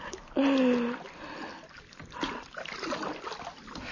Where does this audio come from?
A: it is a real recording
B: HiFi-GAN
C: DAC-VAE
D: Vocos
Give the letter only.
A